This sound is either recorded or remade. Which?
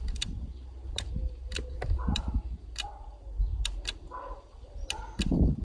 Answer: recorded